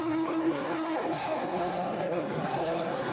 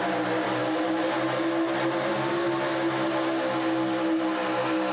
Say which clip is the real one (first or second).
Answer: second